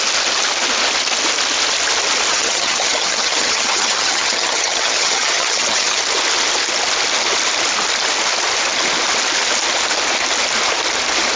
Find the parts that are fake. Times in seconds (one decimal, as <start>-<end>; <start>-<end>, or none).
2.3-6.0